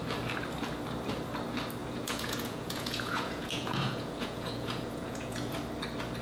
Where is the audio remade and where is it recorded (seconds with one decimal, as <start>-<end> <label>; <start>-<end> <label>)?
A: 0.0-1.8 recorded; 1.8-5.5 remade; 5.5-6.2 recorded

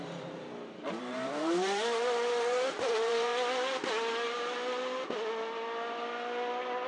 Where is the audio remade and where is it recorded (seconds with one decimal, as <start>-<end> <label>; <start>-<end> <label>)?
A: 0.0-0.4 remade; 0.4-1.0 recorded; 1.0-3.3 remade; 3.3-6.9 recorded

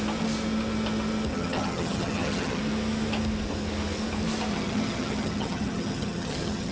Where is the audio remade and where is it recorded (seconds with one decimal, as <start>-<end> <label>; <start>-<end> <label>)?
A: 0.0-1.3 recorded; 1.3-2.6 remade; 2.6-4.5 recorded; 4.5-6.7 remade

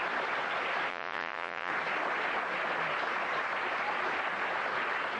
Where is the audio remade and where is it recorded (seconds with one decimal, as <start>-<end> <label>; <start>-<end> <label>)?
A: 0.0-0.9 recorded; 0.9-1.7 remade; 1.7-5.2 recorded

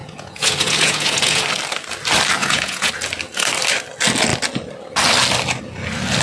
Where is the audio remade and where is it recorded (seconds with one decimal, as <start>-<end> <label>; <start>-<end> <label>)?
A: 0.0-1.4 remade; 1.4-2.4 recorded; 2.4-2.9 remade; 2.9-6.2 recorded